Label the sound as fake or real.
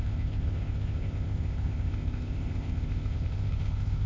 fake